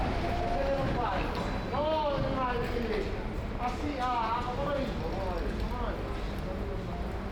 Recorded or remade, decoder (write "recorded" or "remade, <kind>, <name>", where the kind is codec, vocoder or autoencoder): recorded